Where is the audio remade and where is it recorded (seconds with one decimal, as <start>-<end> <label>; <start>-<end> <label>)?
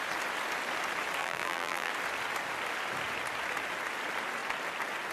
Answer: 0.0-1.2 recorded; 1.2-1.9 remade; 1.9-5.1 recorded